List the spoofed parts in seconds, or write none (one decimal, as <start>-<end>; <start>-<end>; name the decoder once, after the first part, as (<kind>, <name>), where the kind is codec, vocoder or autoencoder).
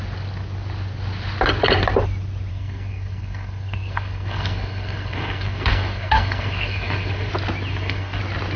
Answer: 2.5-7.3 (codec, SNAC); 7.7-8.2